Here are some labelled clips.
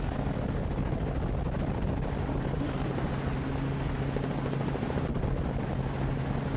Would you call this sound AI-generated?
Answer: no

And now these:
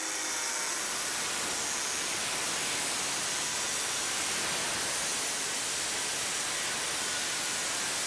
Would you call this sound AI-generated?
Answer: no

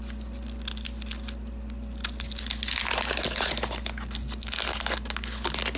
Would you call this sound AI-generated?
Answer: no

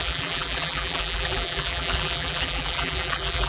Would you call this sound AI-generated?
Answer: yes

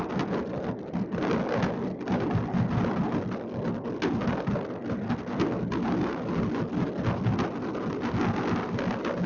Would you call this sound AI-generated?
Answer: no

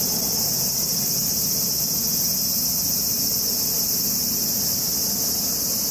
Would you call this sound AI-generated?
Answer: no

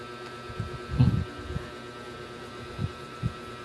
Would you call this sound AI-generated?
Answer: no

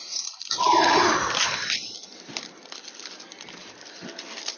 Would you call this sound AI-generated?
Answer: yes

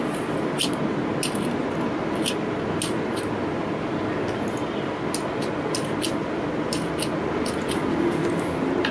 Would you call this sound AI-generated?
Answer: no